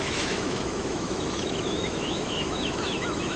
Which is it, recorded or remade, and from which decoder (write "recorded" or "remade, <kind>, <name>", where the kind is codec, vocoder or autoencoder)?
remade, autoencoder, DAC-VAE